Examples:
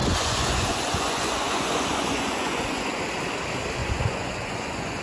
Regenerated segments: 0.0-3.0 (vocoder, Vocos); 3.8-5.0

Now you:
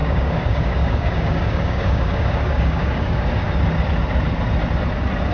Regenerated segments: 0.0-3.2 (codec, DAC)

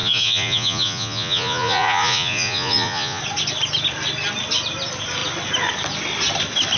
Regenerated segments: 0.0-3.2 (vocoder, Vocos)